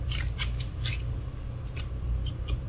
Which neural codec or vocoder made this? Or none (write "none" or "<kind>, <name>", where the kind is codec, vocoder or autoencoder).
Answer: vocoder, BigVGAN v2